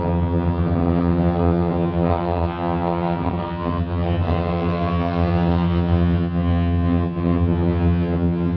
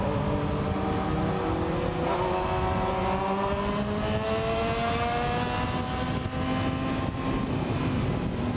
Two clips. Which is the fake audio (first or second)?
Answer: first